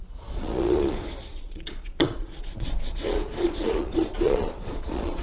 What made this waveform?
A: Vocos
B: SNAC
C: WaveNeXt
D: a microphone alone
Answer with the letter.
A